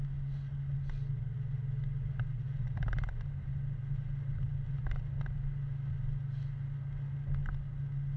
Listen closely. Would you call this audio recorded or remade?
recorded